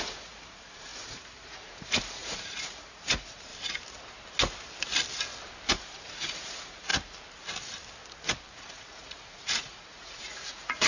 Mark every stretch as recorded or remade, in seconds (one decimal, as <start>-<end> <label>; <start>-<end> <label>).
0.0-3.5 remade; 3.5-5.7 recorded; 5.7-6.9 remade; 6.9-8.5 recorded; 8.5-10.9 remade